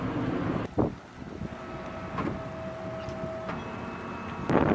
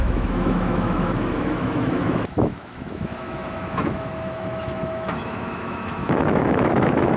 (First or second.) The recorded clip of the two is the first